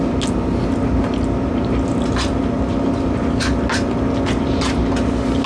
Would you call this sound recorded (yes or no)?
yes